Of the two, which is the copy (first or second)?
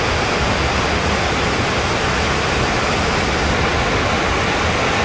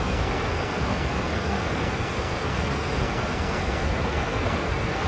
second